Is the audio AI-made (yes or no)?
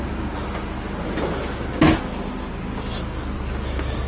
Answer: no